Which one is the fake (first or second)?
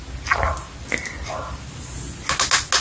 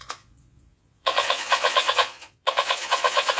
second